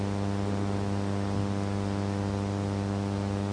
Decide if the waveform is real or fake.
real